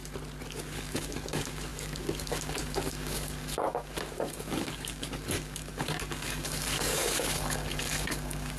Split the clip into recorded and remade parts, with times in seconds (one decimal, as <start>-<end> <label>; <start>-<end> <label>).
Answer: 0.0-0.5 recorded; 0.5-8.6 remade

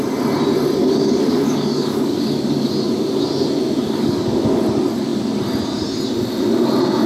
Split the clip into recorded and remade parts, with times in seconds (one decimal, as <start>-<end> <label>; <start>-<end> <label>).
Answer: 0.0-0.8 recorded; 0.8-2.7 remade; 2.7-3.8 recorded; 3.8-4.6 remade; 4.6-7.1 recorded

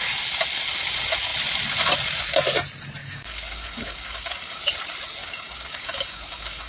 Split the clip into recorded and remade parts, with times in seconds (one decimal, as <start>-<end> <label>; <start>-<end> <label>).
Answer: 0.0-3.0 recorded; 3.0-4.6 remade; 4.6-5.2 recorded; 5.2-6.7 remade

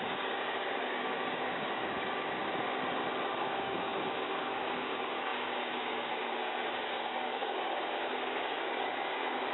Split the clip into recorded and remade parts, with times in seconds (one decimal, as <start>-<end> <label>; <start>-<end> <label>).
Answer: 0.0-2.4 remade; 2.4-3.4 recorded; 3.4-9.5 remade

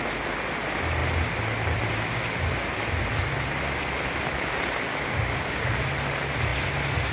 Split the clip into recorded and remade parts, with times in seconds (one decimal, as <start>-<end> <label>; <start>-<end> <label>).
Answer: 0.0-4.9 recorded; 4.9-5.7 remade; 5.7-7.1 recorded

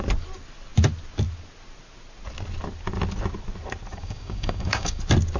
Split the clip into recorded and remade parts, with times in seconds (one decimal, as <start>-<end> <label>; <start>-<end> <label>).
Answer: 0.0-3.9 recorded; 3.9-5.0 remade; 5.0-5.4 recorded